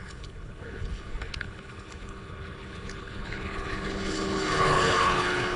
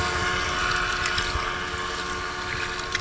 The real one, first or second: second